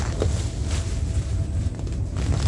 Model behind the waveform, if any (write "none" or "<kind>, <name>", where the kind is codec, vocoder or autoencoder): none